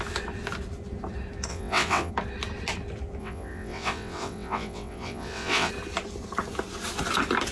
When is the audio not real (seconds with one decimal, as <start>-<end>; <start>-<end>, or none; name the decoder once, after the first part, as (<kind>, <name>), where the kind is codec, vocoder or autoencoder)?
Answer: 1.5-2.1 (vocoder, WaveNeXt); 3.2-5.7